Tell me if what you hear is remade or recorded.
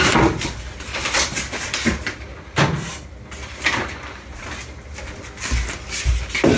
recorded